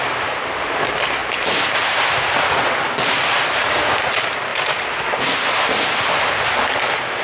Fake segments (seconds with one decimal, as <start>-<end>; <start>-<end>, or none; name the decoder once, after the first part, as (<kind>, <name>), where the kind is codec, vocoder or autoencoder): none